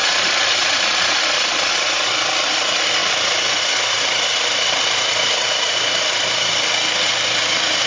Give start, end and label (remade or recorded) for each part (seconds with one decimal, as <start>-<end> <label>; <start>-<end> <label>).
0.0-1.7 remade; 1.7-3.0 recorded; 3.0-3.6 remade; 3.6-7.9 recorded